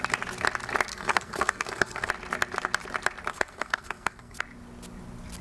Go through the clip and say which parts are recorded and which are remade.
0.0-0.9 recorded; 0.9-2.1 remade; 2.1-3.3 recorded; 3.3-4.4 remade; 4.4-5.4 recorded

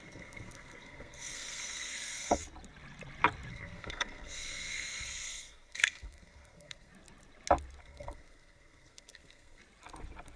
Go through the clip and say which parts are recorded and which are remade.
0.0-2.4 remade; 2.4-3.5 recorded; 3.5-6.9 remade; 6.9-7.8 recorded; 7.8-9.6 remade; 9.6-10.4 recorded

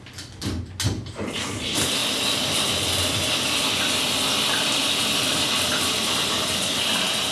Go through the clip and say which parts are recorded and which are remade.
0.0-7.3 recorded

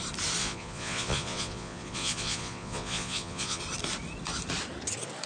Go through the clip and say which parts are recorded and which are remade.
0.0-0.4 recorded; 0.4-3.6 remade; 3.6-5.3 recorded

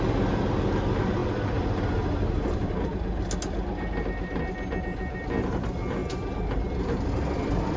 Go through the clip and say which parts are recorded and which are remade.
0.0-7.8 recorded